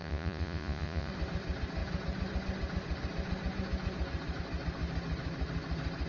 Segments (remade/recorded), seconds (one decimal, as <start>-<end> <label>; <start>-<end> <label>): 0.0-1.1 remade; 1.1-6.1 recorded